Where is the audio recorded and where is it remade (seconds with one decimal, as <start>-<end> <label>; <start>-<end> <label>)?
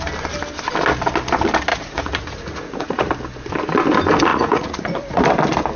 0.0-1.7 recorded; 1.7-3.1 remade; 3.1-4.3 recorded; 4.3-5.2 remade; 5.2-5.8 recorded